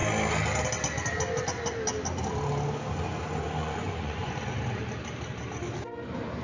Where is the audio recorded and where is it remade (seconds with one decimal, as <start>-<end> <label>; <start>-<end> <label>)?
0.0-3.6 recorded; 3.6-4.3 remade; 4.3-6.4 recorded